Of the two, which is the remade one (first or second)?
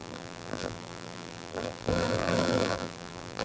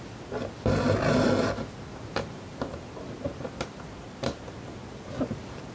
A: first